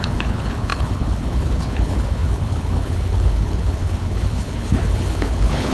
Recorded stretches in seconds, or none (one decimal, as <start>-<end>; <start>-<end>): none